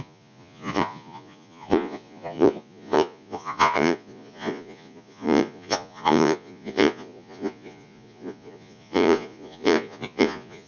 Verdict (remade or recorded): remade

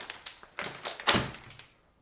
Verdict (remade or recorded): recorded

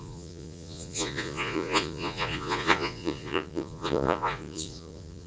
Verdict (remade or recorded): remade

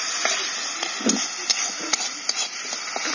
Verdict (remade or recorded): recorded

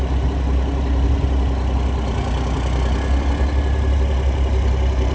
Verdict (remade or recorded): recorded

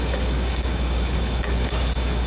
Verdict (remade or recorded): remade